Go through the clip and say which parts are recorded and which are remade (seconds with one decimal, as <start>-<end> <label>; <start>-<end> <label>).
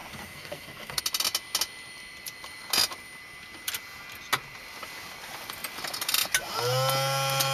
0.0-1.0 remade; 1.0-7.5 recorded